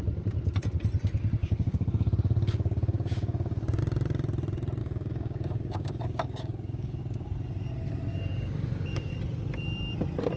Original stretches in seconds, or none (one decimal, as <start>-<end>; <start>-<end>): 0.0-1.4; 3.8-4.8; 7.0-8.1; 9.1-10.4